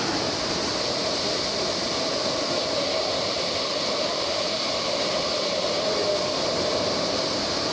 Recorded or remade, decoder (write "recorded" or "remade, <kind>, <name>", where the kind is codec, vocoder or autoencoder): recorded